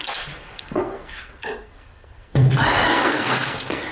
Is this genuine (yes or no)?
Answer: no